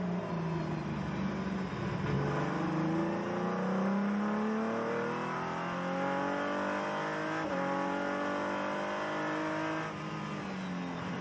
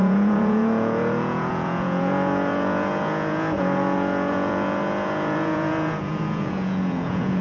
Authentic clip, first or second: first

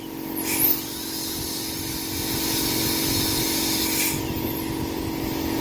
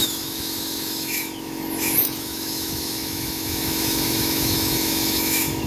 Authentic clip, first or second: first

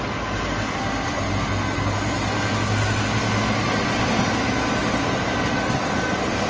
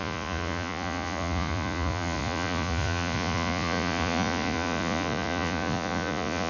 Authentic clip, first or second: first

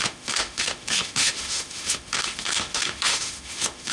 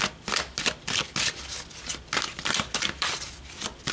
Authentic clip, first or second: second